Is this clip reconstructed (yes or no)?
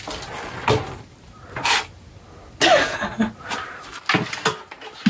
no